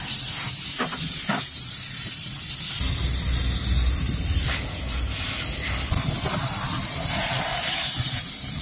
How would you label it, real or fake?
fake